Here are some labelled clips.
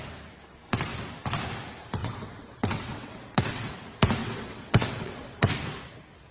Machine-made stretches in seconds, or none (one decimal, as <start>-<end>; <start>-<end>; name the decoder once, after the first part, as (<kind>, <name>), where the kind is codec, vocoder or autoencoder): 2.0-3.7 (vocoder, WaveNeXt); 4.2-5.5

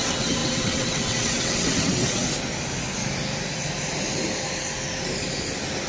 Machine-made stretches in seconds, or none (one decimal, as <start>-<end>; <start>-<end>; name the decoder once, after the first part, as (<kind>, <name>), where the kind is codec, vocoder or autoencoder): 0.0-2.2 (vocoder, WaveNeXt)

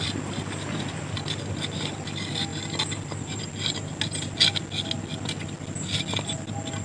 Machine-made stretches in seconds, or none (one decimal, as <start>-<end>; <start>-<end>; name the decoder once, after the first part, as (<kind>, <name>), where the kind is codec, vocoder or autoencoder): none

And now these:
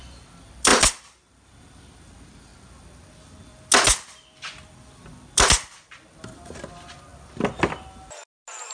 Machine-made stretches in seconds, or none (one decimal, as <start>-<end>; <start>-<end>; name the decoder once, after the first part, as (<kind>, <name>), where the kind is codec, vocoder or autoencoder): none

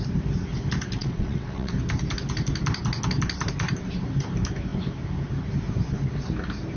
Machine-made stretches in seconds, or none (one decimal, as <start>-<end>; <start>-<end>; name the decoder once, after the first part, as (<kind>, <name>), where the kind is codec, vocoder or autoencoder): 1.0-1.7 (vocoder, WaveNeXt)